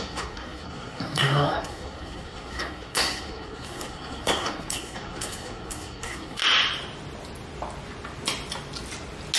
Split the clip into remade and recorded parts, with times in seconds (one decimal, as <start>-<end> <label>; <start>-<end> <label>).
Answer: 0.0-6.4 remade; 6.4-9.4 recorded